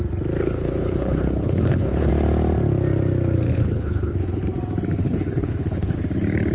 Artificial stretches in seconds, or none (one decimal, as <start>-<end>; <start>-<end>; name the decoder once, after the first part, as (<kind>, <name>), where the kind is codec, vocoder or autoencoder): 0.4-2.1 (codec, HILCodec); 3.5-4.4; 5.0-6.0